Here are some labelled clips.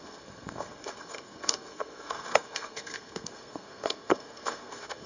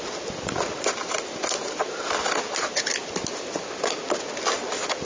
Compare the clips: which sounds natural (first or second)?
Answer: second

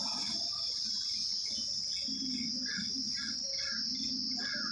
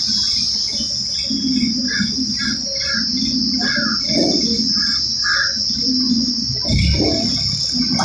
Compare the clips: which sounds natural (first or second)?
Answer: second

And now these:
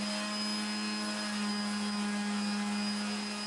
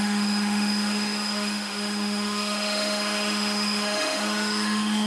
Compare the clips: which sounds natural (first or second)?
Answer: first